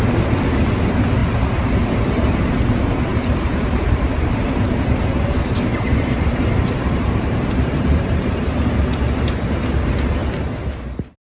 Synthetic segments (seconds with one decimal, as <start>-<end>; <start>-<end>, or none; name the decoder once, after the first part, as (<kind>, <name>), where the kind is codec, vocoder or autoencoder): 3.1-4.0 (vocoder, BigVGAN v2); 5.7-9.0